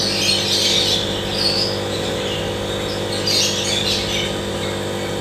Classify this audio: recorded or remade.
recorded